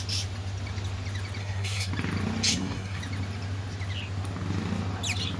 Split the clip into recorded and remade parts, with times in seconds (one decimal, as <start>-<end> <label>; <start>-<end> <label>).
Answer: 0.0-1.4 recorded; 1.4-1.9 remade; 1.9-2.5 recorded; 2.5-3.0 remade; 3.0-5.4 recorded